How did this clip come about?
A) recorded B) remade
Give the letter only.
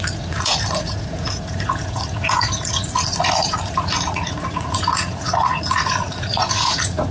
B